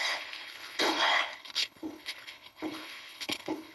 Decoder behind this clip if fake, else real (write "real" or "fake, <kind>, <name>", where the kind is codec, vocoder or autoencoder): fake, codec, HILCodec